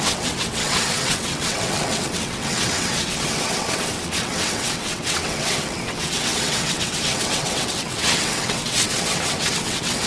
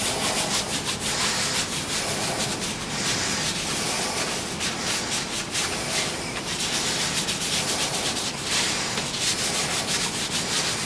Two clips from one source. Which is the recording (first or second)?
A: second